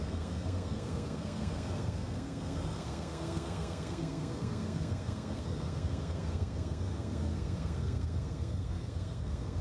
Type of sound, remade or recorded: remade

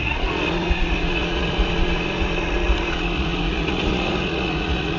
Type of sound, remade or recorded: remade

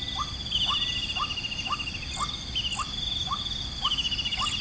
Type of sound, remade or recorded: recorded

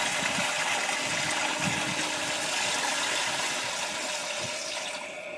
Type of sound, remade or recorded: recorded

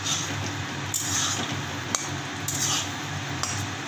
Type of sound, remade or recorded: recorded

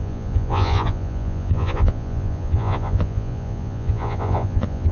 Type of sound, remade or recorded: remade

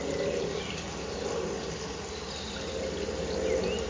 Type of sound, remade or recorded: recorded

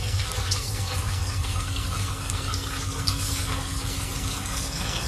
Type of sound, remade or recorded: remade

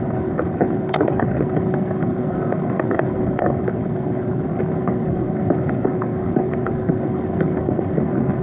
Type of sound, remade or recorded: remade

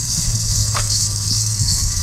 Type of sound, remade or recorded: remade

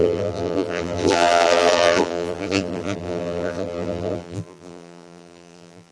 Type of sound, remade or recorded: remade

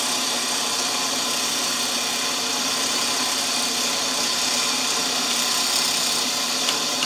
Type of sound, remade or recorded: recorded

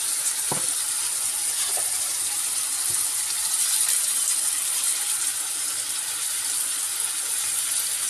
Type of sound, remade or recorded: recorded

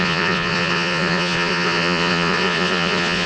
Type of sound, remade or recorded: remade